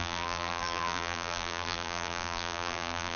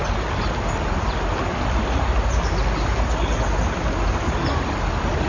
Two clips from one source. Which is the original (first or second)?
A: second